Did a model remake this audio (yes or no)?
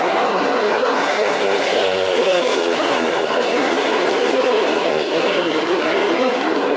yes